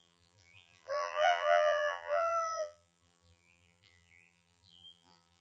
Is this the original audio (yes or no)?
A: no